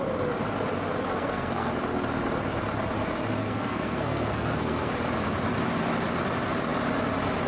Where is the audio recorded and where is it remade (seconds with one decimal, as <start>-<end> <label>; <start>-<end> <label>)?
0.0-1.1 recorded; 1.1-1.7 remade; 1.7-3.4 recorded; 3.4-4.9 remade; 4.9-7.5 recorded